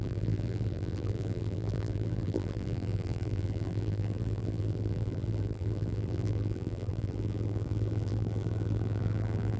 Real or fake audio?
fake